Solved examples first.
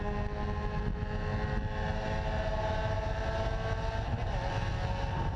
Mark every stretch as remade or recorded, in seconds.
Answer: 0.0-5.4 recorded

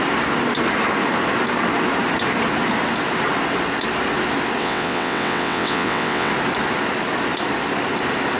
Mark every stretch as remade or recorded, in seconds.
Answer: 0.0-4.6 recorded; 4.6-6.3 remade; 6.3-8.4 recorded